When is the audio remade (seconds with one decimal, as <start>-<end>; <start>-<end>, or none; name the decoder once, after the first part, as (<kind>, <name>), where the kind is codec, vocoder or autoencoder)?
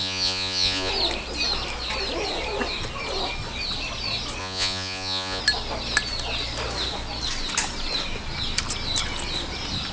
0.0-0.9 (vocoder, Vocos); 4.4-5.4